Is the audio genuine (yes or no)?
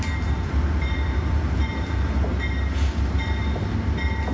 yes